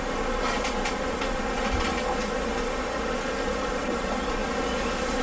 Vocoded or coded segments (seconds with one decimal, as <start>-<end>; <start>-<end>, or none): 0.0-1.9; 3.4-4.4